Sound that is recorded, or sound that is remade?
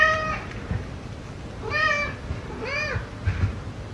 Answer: recorded